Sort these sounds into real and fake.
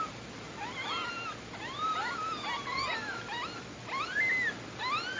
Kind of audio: real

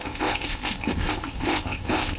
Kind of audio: fake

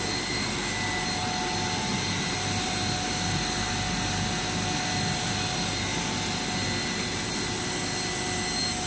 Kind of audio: real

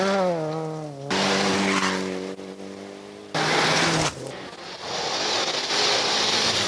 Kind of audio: real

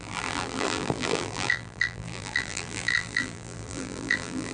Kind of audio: fake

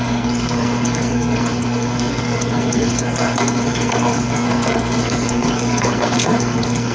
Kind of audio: fake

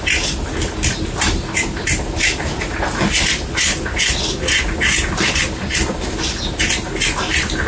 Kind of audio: real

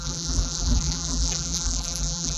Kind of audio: fake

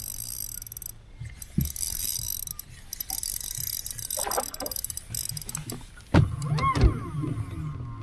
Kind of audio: real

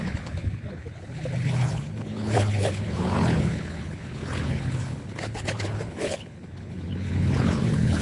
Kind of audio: fake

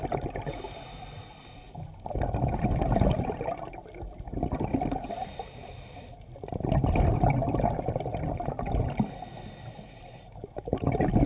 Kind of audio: real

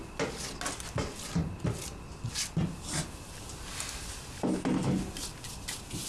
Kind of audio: real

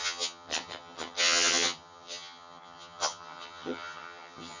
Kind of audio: fake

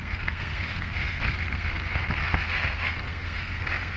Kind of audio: fake